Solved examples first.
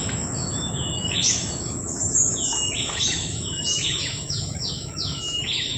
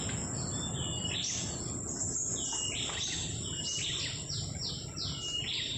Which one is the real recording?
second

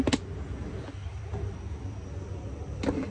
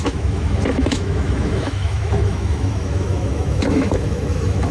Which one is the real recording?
first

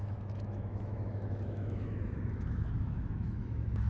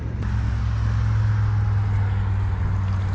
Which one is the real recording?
second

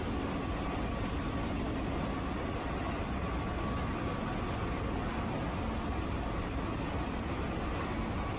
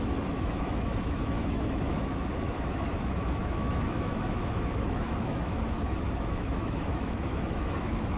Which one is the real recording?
first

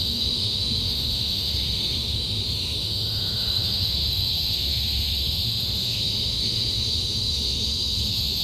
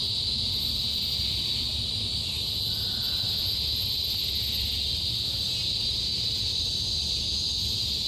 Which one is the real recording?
second